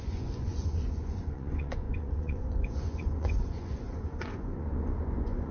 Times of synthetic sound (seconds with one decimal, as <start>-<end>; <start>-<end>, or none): 0.0-5.5